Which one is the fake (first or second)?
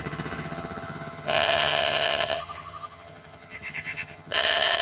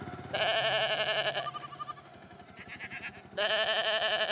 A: first